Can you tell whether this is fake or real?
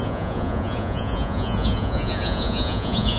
fake